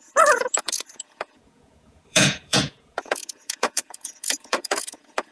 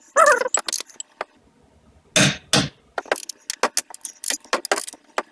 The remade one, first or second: first